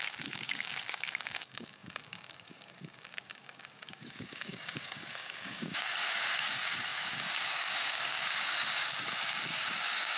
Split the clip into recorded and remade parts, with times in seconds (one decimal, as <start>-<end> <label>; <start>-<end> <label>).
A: 0.0-10.2 remade